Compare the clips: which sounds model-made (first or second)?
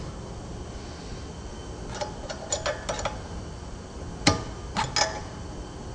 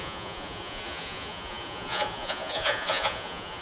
second